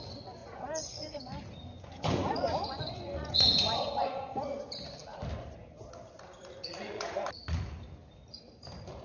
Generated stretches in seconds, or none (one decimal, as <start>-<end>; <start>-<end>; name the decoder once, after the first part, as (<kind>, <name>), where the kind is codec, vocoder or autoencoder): 0.4-4.6 (vocoder, Vocos); 6.6-7.2